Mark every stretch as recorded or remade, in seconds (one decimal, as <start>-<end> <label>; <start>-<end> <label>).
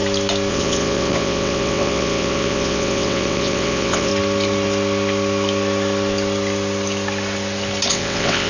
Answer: 0.0-0.5 recorded; 0.5-4.1 remade; 4.1-7.9 recorded; 7.9-8.5 remade